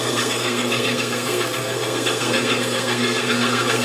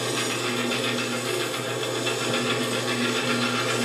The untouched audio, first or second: second